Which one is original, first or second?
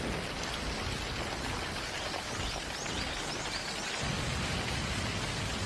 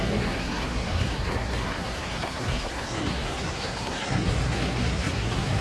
first